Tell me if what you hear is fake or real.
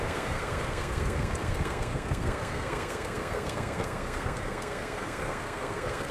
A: fake